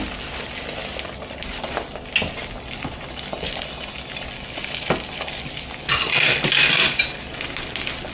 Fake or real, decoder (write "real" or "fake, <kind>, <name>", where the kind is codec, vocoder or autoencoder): real